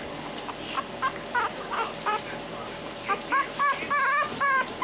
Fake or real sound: real